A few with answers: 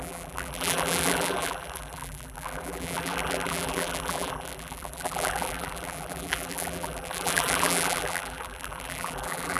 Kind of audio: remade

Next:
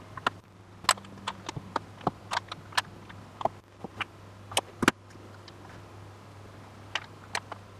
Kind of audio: recorded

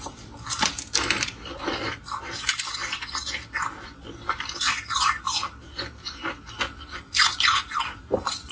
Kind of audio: remade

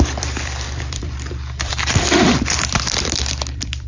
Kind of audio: remade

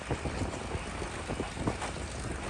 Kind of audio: recorded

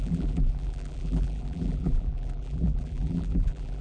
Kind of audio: remade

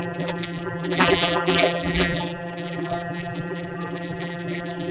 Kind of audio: remade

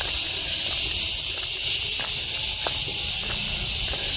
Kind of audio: recorded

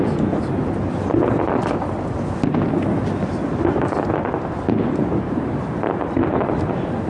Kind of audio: recorded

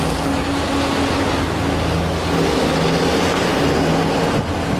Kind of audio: recorded